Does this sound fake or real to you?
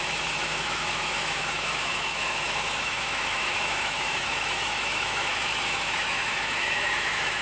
fake